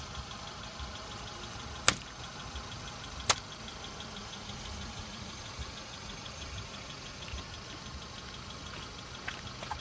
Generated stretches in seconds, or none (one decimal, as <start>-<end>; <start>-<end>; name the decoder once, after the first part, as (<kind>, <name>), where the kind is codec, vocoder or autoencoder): 4.2-7.4 (vocoder, Vocos)